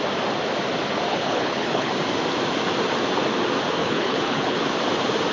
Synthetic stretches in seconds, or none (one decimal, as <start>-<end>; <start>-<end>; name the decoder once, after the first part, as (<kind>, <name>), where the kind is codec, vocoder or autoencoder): 1.1-1.9 (codec, HILCodec); 3.8-4.6